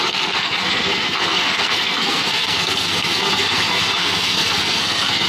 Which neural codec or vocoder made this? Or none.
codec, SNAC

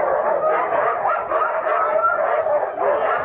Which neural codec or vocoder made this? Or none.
none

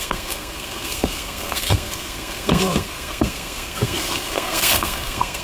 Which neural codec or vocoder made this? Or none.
codec, SNAC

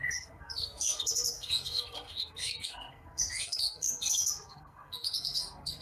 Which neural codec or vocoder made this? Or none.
codec, SNAC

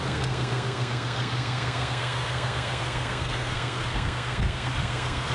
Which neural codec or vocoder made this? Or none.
codec, SNAC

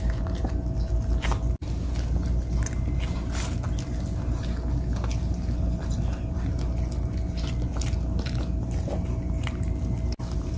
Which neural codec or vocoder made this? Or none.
none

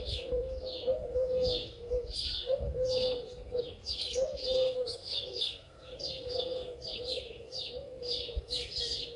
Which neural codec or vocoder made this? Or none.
codec, SNAC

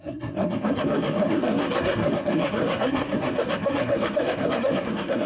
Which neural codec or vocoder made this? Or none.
codec, SNAC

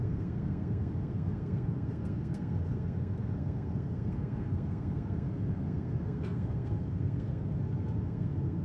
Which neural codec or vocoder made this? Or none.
codec, SNAC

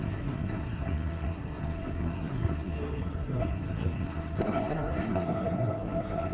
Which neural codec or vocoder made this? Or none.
codec, SNAC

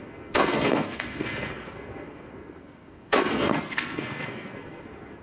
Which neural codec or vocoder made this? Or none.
codec, SNAC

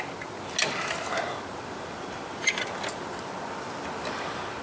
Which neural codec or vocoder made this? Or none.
none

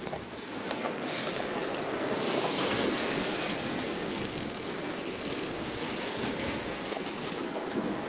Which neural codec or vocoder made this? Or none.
codec, SNAC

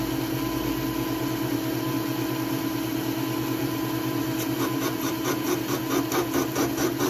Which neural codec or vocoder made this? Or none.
none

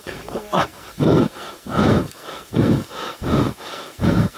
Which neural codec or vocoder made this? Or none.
codec, SNAC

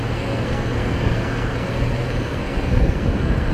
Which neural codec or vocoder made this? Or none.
codec, SNAC